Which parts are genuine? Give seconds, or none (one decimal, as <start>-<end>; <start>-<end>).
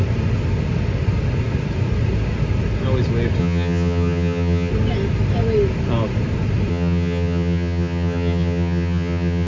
0.0-3.4; 4.7-6.7